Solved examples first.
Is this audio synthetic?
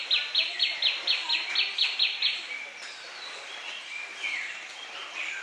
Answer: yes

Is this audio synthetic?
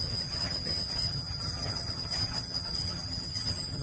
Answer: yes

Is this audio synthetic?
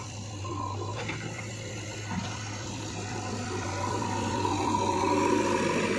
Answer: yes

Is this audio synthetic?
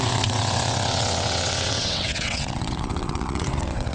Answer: yes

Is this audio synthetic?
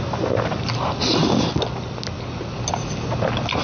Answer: no